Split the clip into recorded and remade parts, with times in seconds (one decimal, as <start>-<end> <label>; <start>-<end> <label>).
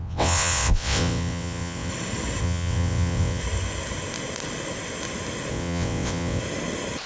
0.0-1.9 remade; 1.9-2.4 recorded; 2.4-3.4 remade; 3.4-5.5 recorded; 5.5-6.4 remade; 6.4-7.1 recorded